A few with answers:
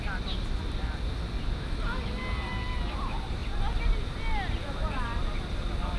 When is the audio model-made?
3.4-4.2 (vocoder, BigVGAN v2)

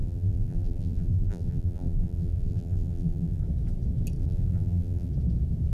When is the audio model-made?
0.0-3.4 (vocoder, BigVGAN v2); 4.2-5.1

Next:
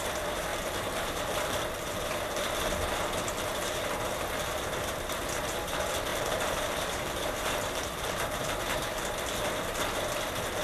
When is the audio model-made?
0.5-2.4 (vocoder, BigVGAN v2); 6.1-8.6